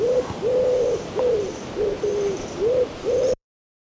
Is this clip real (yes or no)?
no